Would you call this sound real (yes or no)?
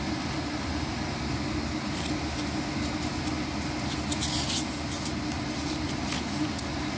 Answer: yes